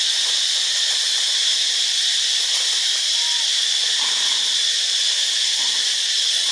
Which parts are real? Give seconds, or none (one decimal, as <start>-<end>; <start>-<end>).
0.0-5.9